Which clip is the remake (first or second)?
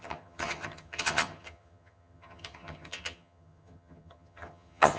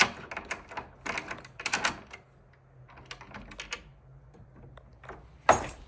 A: first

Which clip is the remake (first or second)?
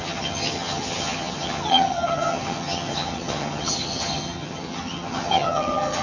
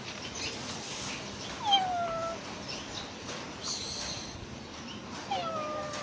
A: first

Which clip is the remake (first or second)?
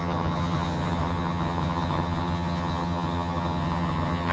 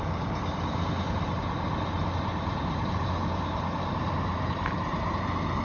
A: first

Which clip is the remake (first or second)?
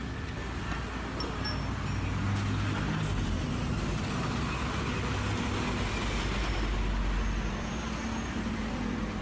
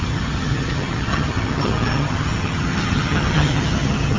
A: second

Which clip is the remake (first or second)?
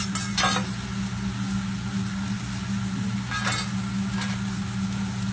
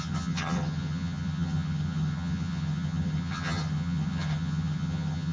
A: second